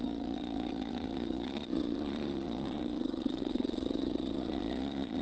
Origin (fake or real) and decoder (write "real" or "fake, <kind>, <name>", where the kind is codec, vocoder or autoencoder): fake, vocoder, Vocos